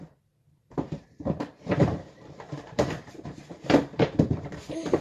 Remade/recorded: remade